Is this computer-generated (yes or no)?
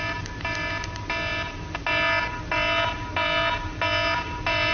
no